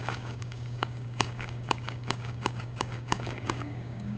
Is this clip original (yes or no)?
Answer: no